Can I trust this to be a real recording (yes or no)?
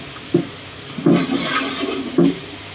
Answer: yes